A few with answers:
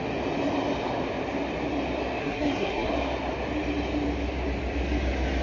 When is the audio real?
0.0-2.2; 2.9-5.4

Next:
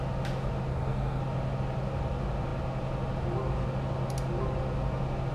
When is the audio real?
0.0-0.7; 1.2-5.3

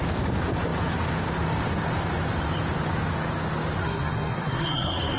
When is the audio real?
0.0-3.8